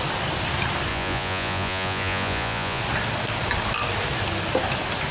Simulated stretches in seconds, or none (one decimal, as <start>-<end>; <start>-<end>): 0.9-2.8